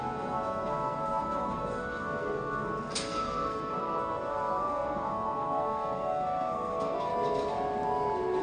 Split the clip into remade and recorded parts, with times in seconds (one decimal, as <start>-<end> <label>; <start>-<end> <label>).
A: 0.0-7.1 remade; 7.1-8.4 recorded